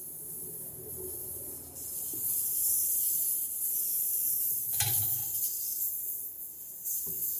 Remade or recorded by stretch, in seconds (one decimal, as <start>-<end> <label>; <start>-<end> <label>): 0.0-1.2 recorded; 1.2-2.9 remade; 2.9-6.8 recorded; 6.8-7.4 remade